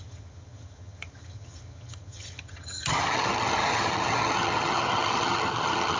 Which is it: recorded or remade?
remade